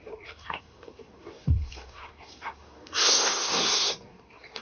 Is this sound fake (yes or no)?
yes